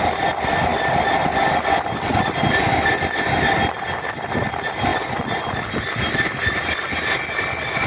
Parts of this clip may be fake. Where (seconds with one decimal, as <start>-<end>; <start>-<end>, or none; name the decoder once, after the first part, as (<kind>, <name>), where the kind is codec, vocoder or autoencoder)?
none